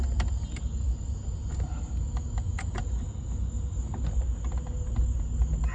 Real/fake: real